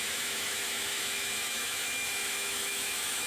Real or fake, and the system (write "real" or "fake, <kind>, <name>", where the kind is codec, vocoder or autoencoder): fake, autoencoder, DAC-VAE